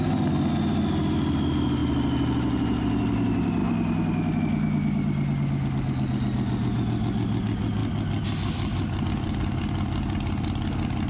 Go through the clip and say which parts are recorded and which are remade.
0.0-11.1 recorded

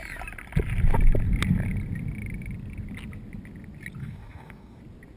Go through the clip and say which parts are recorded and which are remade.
0.0-4.0 recorded; 4.0-4.8 remade; 4.8-5.2 recorded

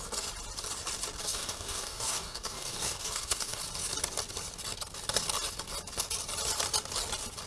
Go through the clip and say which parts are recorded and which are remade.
0.0-1.2 recorded; 1.2-3.6 remade; 3.6-7.5 recorded

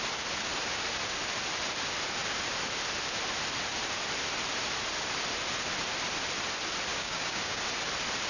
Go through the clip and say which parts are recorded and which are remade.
0.0-6.9 recorded; 6.9-7.6 remade; 7.6-8.3 recorded